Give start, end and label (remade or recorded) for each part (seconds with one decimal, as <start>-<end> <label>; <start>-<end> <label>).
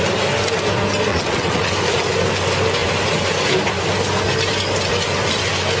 0.0-1.1 recorded; 1.1-1.7 remade; 1.7-5.8 recorded